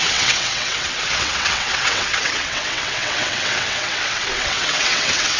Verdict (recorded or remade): remade